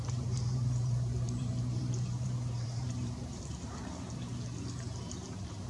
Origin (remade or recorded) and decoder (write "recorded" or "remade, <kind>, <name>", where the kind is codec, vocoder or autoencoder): remade, vocoder, BigVGAN v2